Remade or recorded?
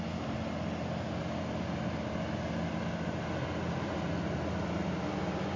recorded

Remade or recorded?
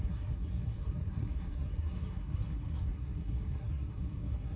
remade